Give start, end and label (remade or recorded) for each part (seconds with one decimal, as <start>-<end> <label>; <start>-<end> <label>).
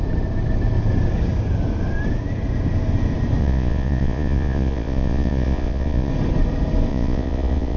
0.0-3.4 recorded; 3.4-6.1 remade; 6.1-6.9 recorded; 6.9-7.8 remade